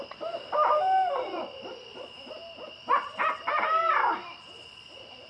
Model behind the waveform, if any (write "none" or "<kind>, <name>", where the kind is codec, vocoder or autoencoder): none